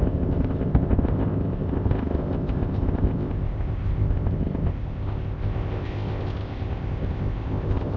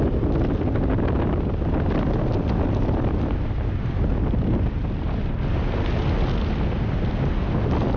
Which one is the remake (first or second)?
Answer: first